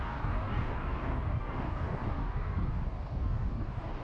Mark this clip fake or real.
fake